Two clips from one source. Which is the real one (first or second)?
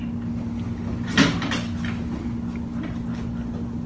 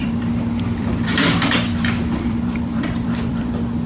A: first